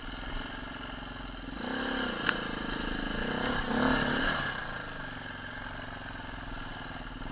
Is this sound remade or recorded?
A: recorded